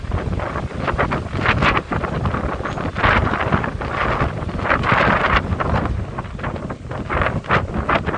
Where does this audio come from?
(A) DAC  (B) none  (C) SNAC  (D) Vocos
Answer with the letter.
B